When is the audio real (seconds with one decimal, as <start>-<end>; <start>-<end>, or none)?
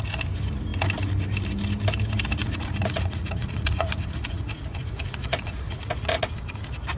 0.0-2.4; 6.6-7.0